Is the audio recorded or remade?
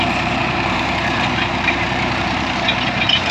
remade